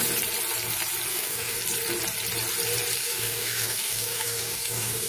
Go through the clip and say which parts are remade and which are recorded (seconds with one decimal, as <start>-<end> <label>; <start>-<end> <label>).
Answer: 0.0-1.1 recorded; 1.1-1.6 remade; 1.6-3.0 recorded; 3.0-5.1 remade